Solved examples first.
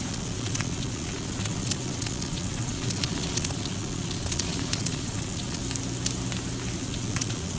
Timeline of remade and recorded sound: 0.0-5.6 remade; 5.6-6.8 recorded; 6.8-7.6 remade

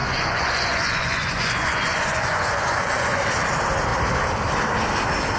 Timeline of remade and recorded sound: 0.0-3.2 remade; 3.2-5.4 recorded

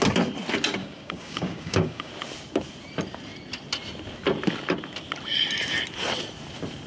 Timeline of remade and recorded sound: 0.0-0.8 recorded; 0.8-2.1 remade; 2.1-6.9 recorded